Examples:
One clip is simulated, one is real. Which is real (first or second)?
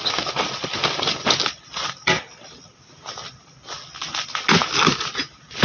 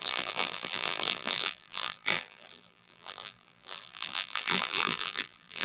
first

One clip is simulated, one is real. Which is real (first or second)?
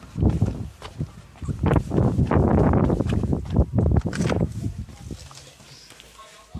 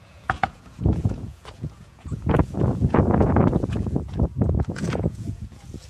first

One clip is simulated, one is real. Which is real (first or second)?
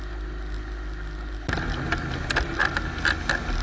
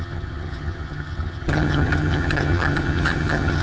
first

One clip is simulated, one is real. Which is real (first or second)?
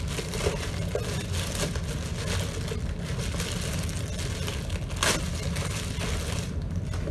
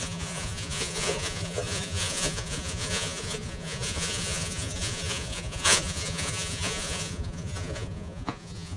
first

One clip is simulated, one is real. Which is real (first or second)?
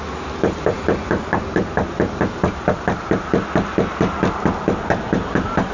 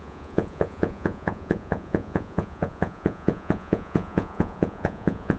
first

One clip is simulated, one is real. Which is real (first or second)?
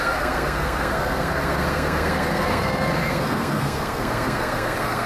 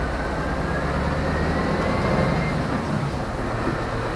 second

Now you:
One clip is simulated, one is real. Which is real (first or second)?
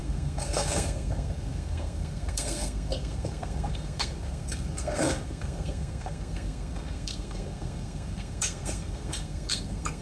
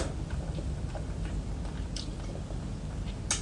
second